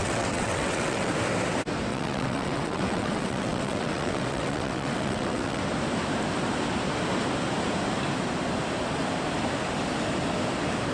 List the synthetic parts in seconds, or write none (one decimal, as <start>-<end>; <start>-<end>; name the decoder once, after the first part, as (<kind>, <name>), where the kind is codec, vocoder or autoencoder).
0.0-1.1 (vocoder, WaveNeXt); 1.9-5.6